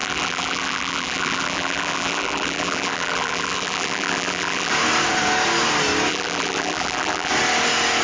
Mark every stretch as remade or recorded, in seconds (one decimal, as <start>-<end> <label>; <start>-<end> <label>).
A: 0.0-4.7 remade; 4.7-6.1 recorded; 6.1-7.3 remade; 7.3-8.0 recorded